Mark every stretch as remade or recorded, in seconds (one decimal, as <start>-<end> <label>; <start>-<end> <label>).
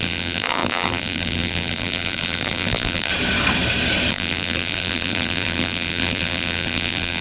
0.0-3.1 remade; 3.1-4.1 recorded; 4.1-7.2 remade